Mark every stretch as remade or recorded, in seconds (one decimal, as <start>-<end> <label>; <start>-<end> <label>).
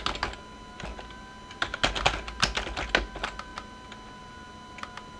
0.0-5.2 recorded